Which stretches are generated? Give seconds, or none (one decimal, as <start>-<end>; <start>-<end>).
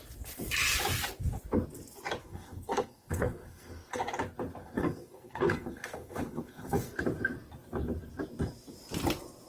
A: 2.2-4.1; 4.6-7.0